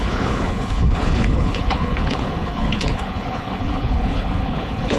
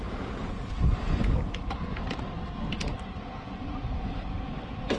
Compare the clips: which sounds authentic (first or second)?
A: second